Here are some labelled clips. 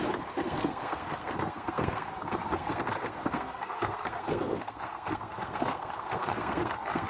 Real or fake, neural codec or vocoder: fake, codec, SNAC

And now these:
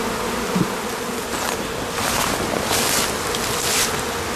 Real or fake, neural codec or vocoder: real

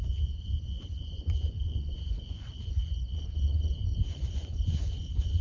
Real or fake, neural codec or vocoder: fake, vocoder, Vocos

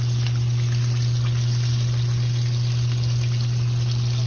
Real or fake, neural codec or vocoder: real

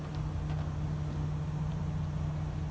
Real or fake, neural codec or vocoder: real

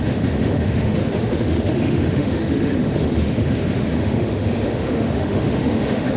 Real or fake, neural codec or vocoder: fake, autoencoder, DAC-VAE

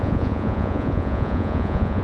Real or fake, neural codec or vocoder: fake, vocoder, Vocos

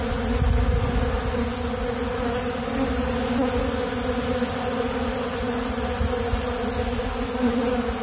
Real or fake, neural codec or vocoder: real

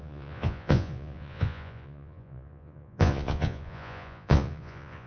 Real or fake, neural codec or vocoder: fake, vocoder, Vocos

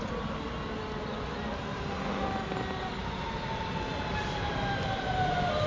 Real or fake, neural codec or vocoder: real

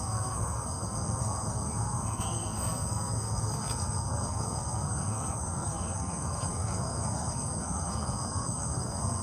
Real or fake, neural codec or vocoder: fake, codec, SNAC